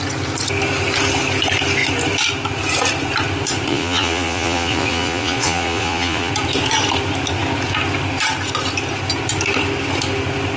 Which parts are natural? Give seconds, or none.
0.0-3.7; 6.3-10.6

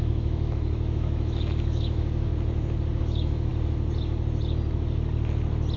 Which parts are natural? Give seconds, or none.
2.3-3.0; 3.5-5.8

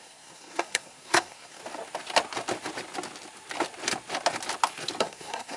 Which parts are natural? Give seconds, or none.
1.6-5.0

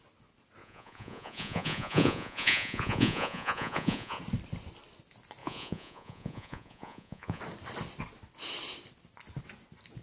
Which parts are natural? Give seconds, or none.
0.0-0.6; 4.2-5.4; 7.4-10.0

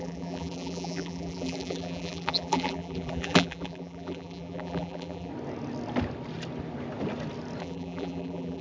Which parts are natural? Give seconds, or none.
5.3-7.6